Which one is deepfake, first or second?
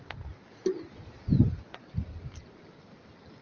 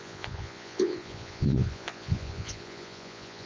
second